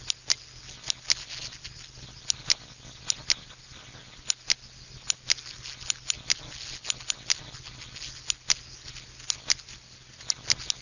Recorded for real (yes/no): yes